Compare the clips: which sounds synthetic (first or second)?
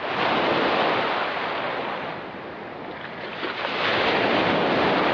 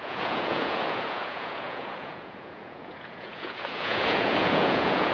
second